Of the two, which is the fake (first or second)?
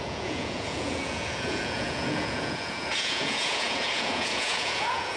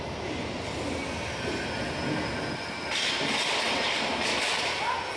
first